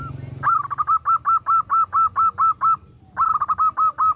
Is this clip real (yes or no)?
yes